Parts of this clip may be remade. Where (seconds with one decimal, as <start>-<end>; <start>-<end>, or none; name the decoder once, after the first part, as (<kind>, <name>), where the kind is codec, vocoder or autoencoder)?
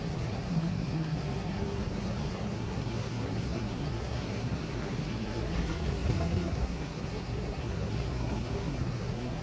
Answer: 0.0-9.4 (codec, SNAC)